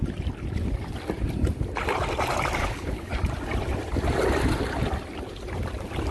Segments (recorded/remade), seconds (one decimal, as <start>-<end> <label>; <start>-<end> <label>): 0.0-2.6 recorded; 2.6-3.1 remade; 3.1-6.1 recorded